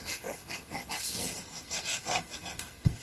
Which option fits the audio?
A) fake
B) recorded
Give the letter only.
A